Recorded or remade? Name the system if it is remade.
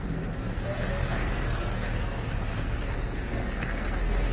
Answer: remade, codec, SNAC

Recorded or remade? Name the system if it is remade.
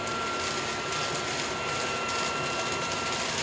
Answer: recorded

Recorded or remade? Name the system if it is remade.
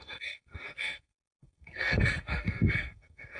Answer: remade, codec, SNAC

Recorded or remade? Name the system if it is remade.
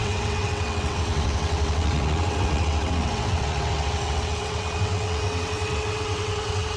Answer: remade, vocoder, WaveNeXt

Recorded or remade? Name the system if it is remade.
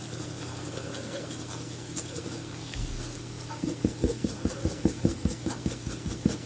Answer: remade, codec, SNAC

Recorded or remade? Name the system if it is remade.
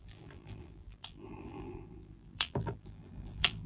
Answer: remade, vocoder, BigVGAN v2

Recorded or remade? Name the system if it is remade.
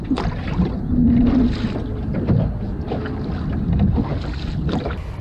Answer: recorded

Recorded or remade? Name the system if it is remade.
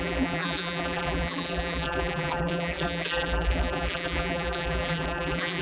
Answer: remade, vocoder, BigVGAN v2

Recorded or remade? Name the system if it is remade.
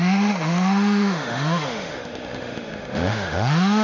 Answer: remade, autoencoder, DAC-VAE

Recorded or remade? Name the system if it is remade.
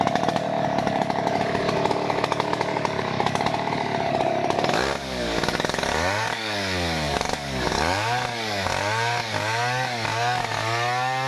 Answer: remade, codec, DAC